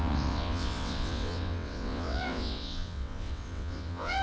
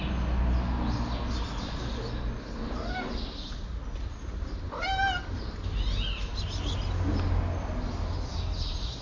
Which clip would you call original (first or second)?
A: second